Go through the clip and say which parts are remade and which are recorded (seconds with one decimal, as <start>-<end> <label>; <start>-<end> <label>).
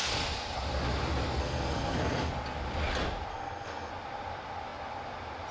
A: 0.0-1.4 recorded; 1.4-2.3 remade; 2.3-3.3 recorded; 3.3-3.9 remade; 3.9-5.5 recorded